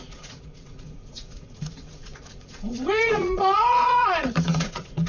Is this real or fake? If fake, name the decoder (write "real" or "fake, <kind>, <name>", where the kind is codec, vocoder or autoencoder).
fake, vocoder, Vocos